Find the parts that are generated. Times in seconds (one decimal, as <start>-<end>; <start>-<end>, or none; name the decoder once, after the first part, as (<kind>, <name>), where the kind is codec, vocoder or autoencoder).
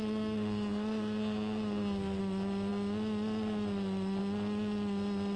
0.0-2.2 (codec, SNAC)